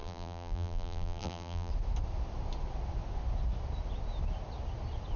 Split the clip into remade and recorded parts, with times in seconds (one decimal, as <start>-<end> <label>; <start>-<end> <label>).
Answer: 0.0-1.7 remade; 1.7-5.2 recorded